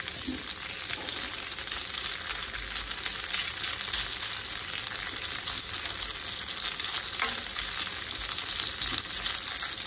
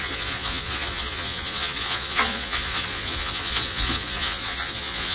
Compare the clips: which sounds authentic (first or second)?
first